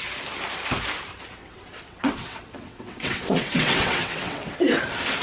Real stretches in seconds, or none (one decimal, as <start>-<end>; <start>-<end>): 0.0-1.4; 4.5-5.2